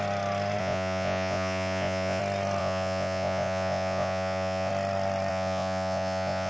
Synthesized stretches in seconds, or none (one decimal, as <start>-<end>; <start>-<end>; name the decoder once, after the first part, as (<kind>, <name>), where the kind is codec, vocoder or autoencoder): 0.6-2.2 (vocoder, Vocos); 2.6-4.7; 5.3-6.5